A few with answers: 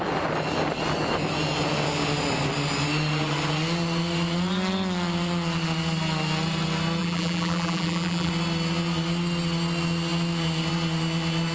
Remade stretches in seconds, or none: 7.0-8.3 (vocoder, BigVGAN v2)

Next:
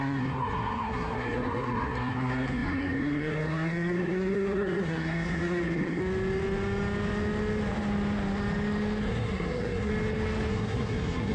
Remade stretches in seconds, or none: 0.0-6.0 (codec, SNAC); 9.0-9.9; 10.5-11.3

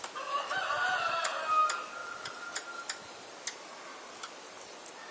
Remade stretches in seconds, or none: none

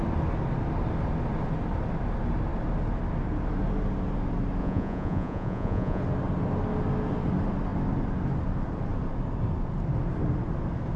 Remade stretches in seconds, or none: 4.6-6.0 (vocoder, Vocos)